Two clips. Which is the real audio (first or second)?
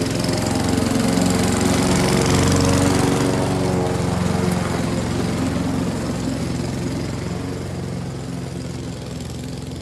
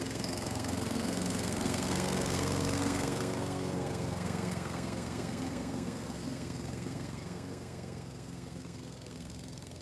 first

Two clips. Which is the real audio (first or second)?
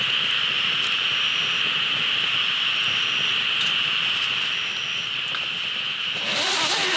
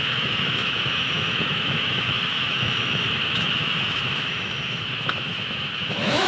first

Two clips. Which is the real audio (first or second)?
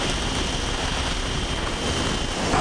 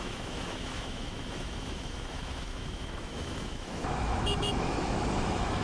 first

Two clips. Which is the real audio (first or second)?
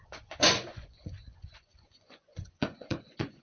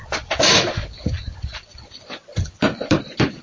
second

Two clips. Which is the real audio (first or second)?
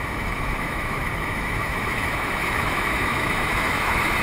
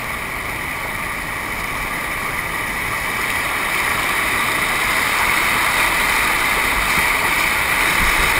second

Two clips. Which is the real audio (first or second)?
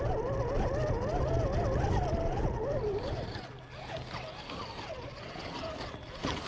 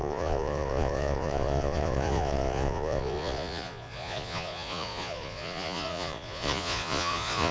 first